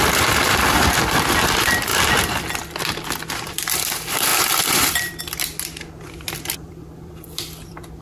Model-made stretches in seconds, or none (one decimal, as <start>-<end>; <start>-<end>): 0.0-1.9; 3.5-8.0